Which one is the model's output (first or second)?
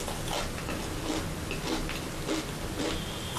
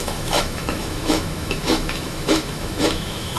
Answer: second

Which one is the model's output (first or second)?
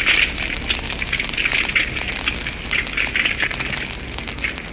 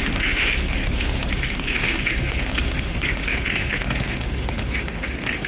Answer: second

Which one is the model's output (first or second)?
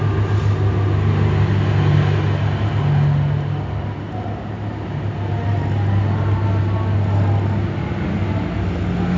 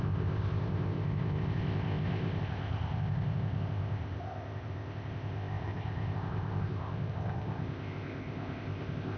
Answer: second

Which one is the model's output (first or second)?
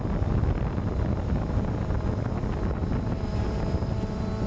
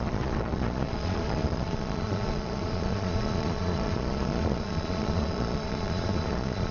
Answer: second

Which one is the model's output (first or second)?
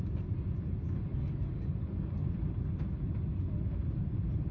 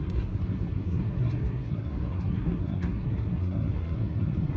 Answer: second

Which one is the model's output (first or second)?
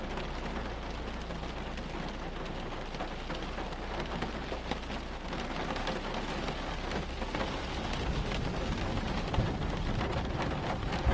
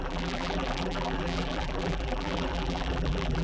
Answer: second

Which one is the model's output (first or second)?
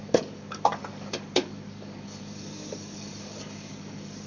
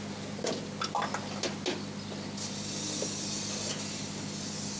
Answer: first